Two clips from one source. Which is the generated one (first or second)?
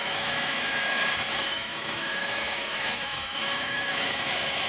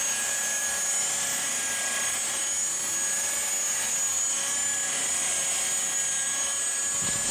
first